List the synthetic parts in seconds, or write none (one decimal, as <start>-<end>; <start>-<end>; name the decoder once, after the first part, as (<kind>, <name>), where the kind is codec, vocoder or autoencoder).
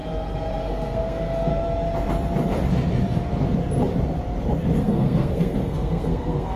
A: 0.6-1.5 (codec, SNAC); 4.8-6.6